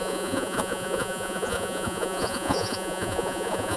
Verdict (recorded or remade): remade